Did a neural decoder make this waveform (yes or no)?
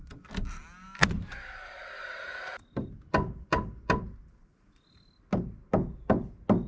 no